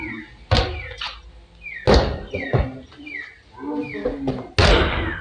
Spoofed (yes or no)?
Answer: no